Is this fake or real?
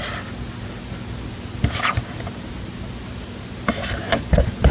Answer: real